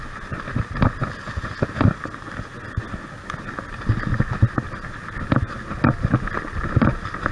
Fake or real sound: real